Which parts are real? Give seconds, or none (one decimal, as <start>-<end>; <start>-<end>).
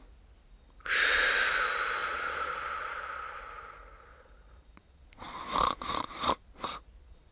0.0-2.0; 3.4-4.1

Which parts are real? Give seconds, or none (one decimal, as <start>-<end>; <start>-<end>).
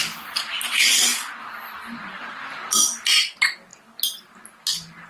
0.0-5.1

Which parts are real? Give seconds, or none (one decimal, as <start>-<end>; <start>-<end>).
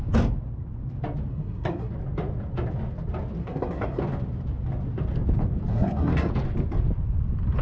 0.0-1.3; 1.9-3.4; 4.0-5.7; 6.3-7.6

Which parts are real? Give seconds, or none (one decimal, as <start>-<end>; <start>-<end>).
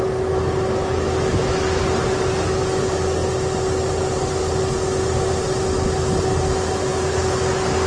0.0-7.9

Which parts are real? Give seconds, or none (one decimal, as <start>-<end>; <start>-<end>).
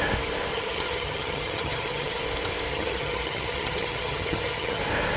0.0-0.5; 2.2-2.7; 4.8-5.2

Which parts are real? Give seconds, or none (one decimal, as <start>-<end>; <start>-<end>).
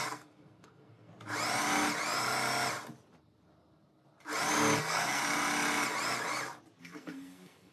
1.1-4.8; 5.2-6.8